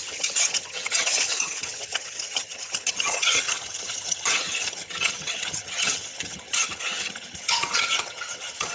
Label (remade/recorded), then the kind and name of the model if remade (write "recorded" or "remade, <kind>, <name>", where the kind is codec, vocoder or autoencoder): remade, vocoder, HiFi-GAN